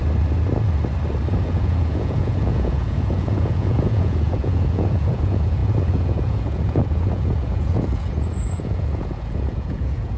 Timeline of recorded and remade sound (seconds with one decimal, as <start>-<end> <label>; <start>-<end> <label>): 0.0-1.3 recorded; 1.3-10.2 remade